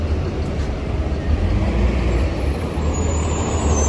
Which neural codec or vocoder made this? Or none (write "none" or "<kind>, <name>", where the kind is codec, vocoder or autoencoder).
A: none